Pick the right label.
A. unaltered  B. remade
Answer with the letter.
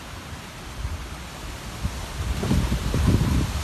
A